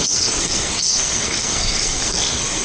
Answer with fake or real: fake